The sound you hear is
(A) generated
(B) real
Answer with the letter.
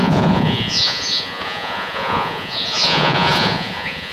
A